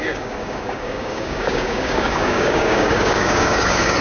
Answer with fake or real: fake